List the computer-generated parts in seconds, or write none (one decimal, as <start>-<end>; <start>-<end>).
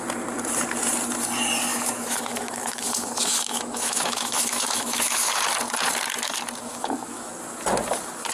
1.7-5.3; 6.7-7.3